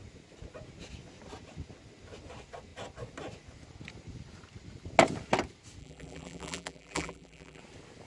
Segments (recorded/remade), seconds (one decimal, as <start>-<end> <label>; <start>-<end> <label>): 0.0-5.8 recorded; 5.8-7.6 remade; 7.6-8.1 recorded